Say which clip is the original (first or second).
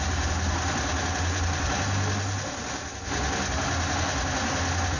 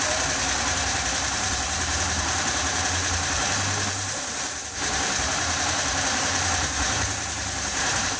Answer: first